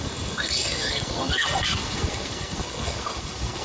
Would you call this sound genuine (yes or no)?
no